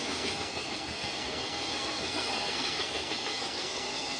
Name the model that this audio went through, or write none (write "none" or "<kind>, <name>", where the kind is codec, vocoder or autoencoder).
codec, SNAC